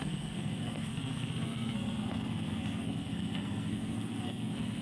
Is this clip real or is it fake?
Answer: fake